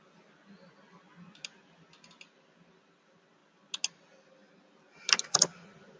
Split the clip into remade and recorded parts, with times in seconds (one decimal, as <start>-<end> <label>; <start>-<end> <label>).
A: 0.0-6.0 recorded